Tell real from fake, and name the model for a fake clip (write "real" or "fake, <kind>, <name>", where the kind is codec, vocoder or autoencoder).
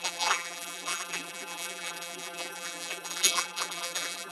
fake, vocoder, BigVGAN v2